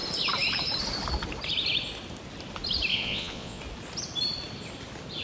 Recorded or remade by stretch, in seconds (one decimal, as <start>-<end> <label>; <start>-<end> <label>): 0.0-2.9 recorded; 2.9-3.6 remade; 3.6-5.2 recorded